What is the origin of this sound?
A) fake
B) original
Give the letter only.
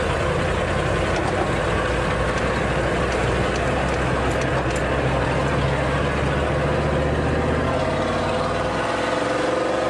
B